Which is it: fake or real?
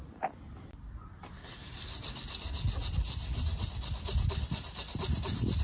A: real